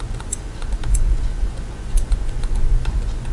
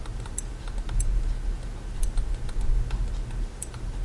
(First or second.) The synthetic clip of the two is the first